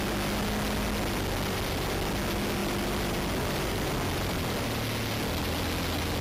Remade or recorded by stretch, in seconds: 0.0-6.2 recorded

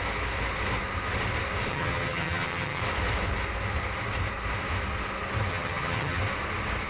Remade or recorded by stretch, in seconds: 0.0-1.7 recorded; 1.7-2.8 remade; 2.8-5.5 recorded; 5.5-6.2 remade; 6.2-6.9 recorded

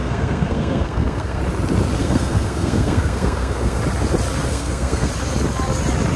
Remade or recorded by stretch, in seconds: 0.0-1.4 remade; 1.4-2.0 recorded; 2.0-3.8 remade; 3.8-4.5 recorded; 4.5-5.1 remade; 5.1-6.2 recorded